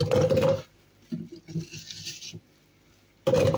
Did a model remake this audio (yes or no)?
no